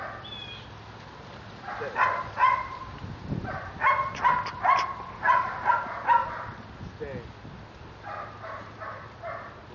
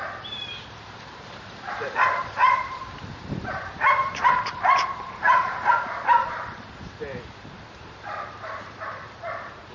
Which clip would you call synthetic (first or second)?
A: second